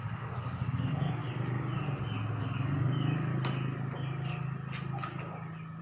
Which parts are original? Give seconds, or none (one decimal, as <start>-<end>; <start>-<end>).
1.2-2.4; 3.3-5.8